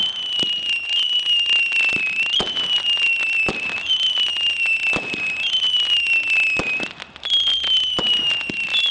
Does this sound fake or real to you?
real